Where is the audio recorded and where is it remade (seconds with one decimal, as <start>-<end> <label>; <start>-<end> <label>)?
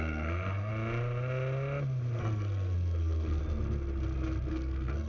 0.0-0.7 remade; 0.7-2.2 recorded; 2.2-3.4 remade; 3.4-4.5 recorded; 4.5-5.1 remade